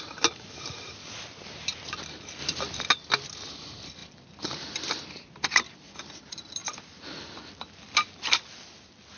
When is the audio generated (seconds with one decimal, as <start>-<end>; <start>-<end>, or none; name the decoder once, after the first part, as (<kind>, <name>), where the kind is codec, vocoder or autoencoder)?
2.4-2.9 (vocoder, BigVGAN v2); 4.0-4.9; 6.6-7.9